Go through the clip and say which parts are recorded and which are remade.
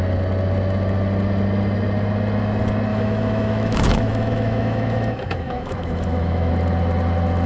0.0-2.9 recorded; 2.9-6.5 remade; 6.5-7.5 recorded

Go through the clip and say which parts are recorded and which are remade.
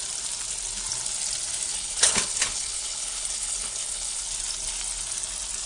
0.0-1.7 recorded; 1.7-4.2 remade; 4.2-5.7 recorded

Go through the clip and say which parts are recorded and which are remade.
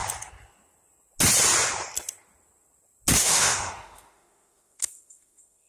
0.0-3.2 recorded; 3.2-5.7 remade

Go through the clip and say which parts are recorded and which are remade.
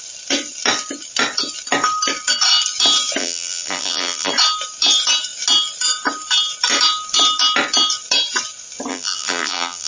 0.0-3.2 recorded; 3.2-4.3 remade; 4.3-8.9 recorded; 8.9-9.9 remade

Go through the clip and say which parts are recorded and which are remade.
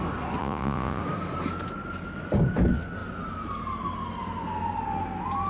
0.0-0.4 recorded; 0.4-1.0 remade; 1.0-5.5 recorded